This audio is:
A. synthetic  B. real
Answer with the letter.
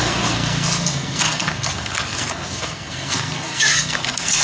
A